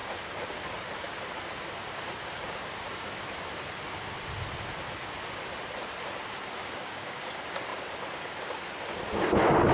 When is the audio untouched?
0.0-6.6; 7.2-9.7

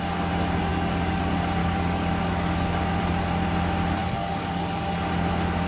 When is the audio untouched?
0.0-0.7; 1.2-1.6; 3.0-4.0; 4.8-5.7